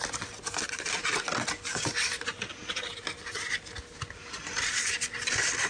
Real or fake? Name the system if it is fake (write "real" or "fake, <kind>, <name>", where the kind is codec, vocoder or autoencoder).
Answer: real